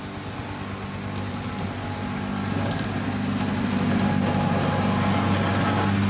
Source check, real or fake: real